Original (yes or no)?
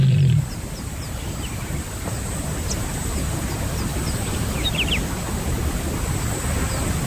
yes